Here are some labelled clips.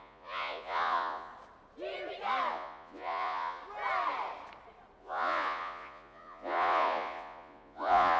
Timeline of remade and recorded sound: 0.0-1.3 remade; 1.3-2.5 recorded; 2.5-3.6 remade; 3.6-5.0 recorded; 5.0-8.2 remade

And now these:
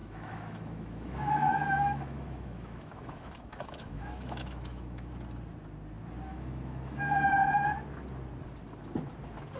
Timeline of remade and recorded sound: 0.0-5.1 remade; 5.1-6.3 recorded; 6.3-7.0 remade; 7.0-9.6 recorded

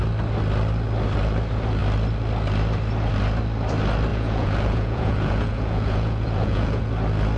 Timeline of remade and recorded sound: 0.0-4.1 recorded; 4.1-6.8 remade; 6.8-7.4 recorded

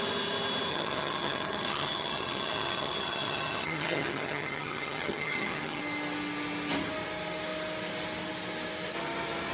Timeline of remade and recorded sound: 0.0-0.7 recorded; 0.7-5.8 remade; 5.8-9.5 recorded

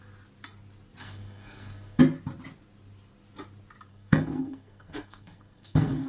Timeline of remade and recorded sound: 0.0-1.0 recorded; 1.0-2.0 remade; 2.0-3.9 recorded; 3.9-6.1 remade

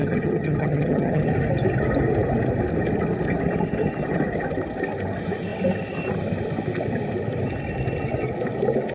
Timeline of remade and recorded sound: 0.0-1.2 remade; 1.2-8.9 recorded